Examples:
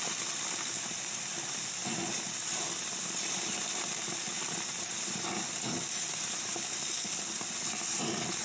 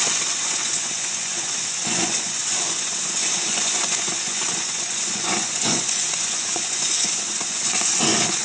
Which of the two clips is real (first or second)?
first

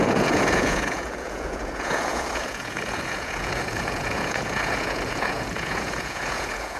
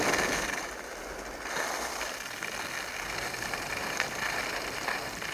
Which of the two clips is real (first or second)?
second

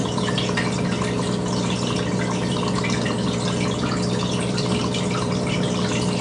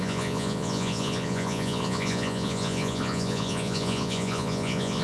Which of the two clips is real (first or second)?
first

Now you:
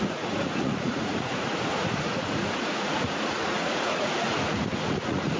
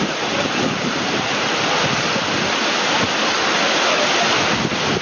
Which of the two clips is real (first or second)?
second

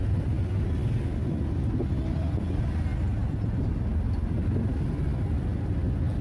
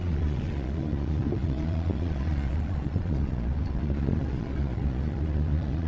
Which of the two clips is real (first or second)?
first